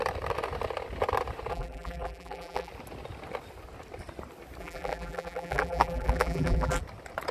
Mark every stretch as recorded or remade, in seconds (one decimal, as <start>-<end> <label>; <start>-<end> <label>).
0.0-1.5 recorded; 1.5-2.7 remade; 2.7-4.6 recorded; 4.6-6.8 remade; 6.8-7.3 recorded